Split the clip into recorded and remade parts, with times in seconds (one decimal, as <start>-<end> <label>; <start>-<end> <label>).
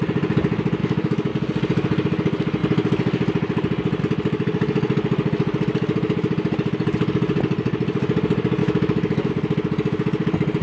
0.0-0.8 recorded; 0.8-1.3 remade; 1.3-8.6 recorded; 8.6-9.3 remade; 9.3-10.6 recorded